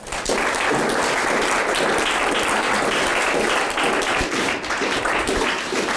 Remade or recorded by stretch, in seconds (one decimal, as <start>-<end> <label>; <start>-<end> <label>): 0.0-6.0 recorded